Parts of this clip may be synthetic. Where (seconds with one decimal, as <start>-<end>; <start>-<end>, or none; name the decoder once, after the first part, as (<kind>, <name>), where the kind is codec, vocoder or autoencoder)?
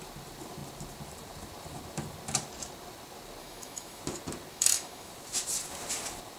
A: 3.4-4.0 (autoencoder, DAC-VAE); 4.5-5.1